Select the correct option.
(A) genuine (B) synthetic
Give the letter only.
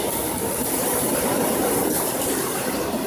A